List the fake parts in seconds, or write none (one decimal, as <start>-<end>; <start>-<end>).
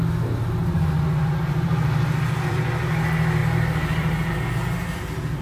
0.6-2.6